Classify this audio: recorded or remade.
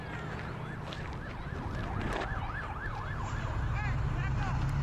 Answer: recorded